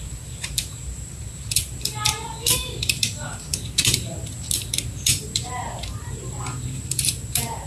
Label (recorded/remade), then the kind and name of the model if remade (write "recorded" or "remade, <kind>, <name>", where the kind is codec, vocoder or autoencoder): remade, vocoder, BigVGAN v2